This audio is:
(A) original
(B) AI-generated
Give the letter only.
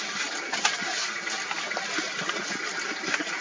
A